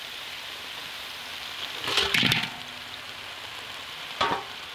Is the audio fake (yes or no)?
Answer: no